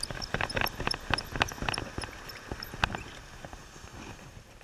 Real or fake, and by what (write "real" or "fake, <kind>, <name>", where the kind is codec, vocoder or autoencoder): real